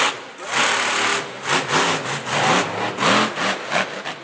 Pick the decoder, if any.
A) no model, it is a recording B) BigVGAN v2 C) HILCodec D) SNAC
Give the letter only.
A